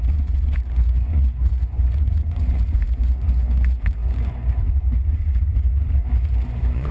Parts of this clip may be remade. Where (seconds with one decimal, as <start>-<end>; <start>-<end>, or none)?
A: 0.0-6.9